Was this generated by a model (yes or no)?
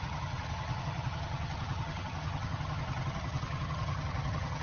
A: yes